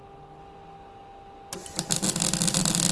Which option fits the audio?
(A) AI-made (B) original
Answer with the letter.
B